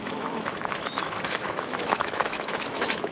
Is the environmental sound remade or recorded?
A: remade